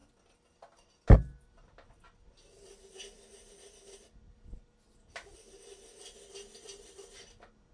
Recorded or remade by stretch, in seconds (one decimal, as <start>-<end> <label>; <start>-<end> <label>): 0.0-7.7 recorded